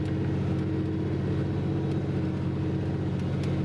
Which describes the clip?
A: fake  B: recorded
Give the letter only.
B